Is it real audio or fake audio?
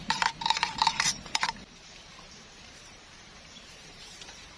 fake